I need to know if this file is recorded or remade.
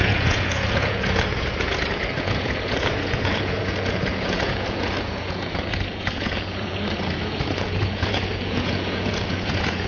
remade